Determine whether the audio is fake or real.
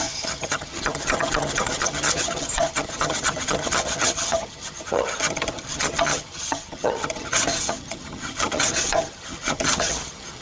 fake